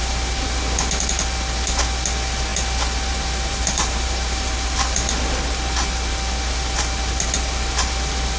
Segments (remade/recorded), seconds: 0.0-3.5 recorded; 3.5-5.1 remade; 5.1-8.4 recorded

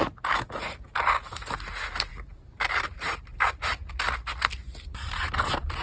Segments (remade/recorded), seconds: 0.0-2.1 recorded; 2.1-3.7 remade; 3.7-4.6 recorded; 4.6-5.3 remade; 5.3-5.8 recorded

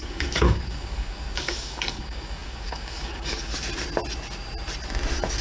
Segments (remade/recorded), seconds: 0.0-3.5 remade; 3.5-5.4 recorded

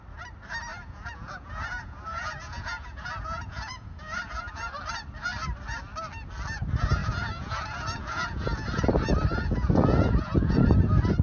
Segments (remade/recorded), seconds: 0.0-0.7 recorded; 0.7-4.7 remade; 4.7-7.0 recorded; 7.0-8.8 remade; 8.8-9.3 recorded; 9.3-10.6 remade; 10.6-11.2 recorded

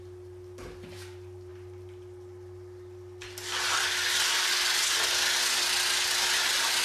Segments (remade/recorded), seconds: 0.0-6.8 recorded

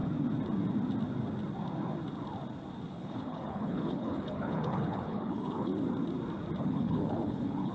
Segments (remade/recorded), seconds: 0.0-2.9 recorded; 2.9-5.7 remade; 5.7-6.6 recorded; 6.6-7.7 remade